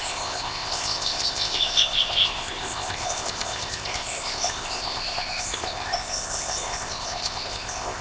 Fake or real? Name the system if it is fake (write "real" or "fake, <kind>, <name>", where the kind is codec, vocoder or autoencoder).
fake, codec, ZipCodec